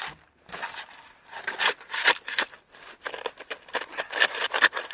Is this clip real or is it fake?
real